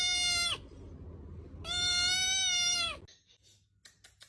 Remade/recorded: recorded